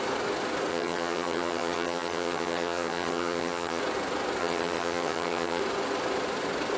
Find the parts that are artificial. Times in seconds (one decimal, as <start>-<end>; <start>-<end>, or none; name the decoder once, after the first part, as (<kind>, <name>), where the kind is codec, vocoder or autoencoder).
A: 0.7-3.8 (vocoder, HiFi-GAN); 4.4-5.6